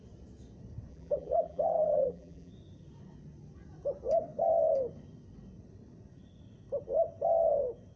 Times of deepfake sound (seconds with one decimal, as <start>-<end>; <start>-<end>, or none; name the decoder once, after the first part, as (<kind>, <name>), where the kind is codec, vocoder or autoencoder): 0.9-2.5 (vocoder, BigVGAN v2)